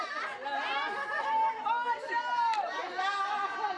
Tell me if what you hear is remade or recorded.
recorded